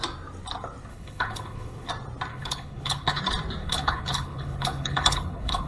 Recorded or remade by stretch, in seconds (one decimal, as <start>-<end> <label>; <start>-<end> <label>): 0.0-0.9 recorded; 0.9-1.9 remade; 1.9-2.3 recorded; 2.3-3.2 remade; 3.2-3.6 recorded; 3.6-5.7 remade